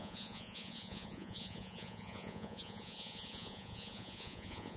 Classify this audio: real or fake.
fake